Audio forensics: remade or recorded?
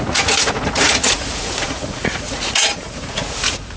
remade